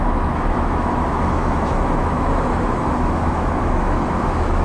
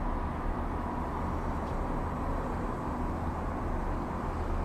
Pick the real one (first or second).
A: second